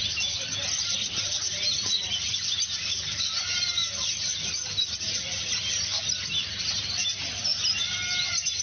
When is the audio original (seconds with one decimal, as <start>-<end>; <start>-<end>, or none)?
0.0-8.6